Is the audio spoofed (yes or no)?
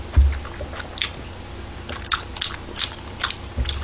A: no